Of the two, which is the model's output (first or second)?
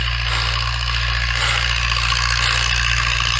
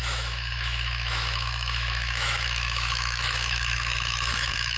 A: second